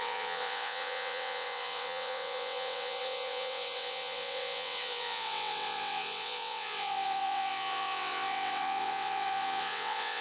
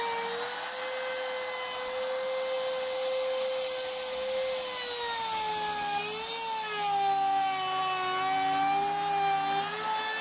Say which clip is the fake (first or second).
first